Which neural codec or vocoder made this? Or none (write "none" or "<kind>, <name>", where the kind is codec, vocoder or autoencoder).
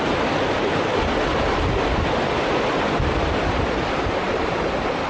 none